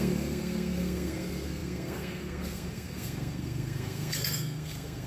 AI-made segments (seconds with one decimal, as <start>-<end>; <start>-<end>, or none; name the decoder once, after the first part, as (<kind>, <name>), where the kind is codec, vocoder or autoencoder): 0.0-5.1 (codec, SNAC)